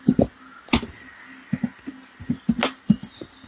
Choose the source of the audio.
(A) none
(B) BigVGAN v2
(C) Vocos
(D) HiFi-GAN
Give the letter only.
A